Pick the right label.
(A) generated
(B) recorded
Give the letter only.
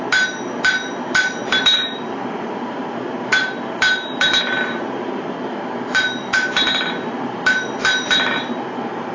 A